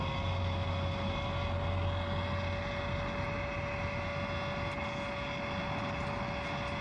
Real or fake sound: real